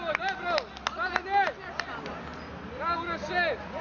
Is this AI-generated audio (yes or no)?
no